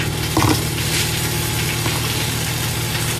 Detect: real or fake real